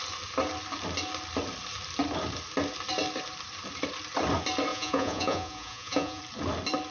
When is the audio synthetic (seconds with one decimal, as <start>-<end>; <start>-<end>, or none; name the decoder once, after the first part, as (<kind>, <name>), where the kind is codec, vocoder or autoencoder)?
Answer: 4.7-6.2 (vocoder, Vocos)